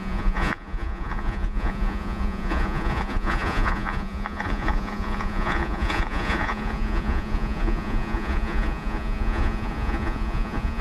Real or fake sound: fake